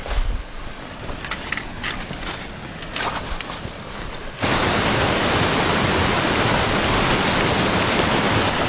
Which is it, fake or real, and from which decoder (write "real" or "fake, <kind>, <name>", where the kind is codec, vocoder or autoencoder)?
real